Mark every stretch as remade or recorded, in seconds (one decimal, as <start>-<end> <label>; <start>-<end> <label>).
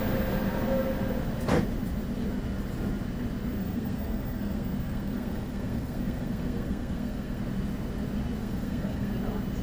0.0-3.6 recorded; 3.6-7.4 remade; 7.4-8.4 recorded; 8.4-9.1 remade; 9.1-9.6 recorded